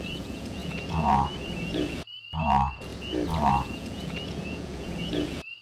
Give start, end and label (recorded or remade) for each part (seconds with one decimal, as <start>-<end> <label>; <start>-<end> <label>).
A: 0.0-2.9 remade; 2.9-3.5 recorded; 3.5-5.6 remade